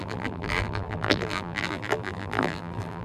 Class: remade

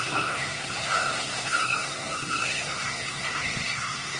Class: remade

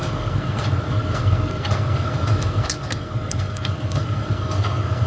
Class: remade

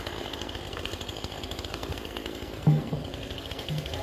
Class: remade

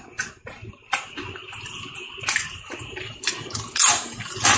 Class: recorded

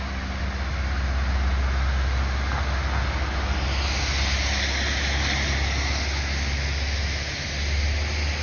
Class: recorded